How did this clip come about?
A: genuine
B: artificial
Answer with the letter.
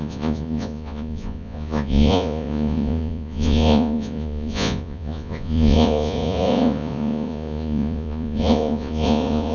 B